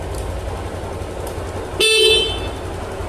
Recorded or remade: recorded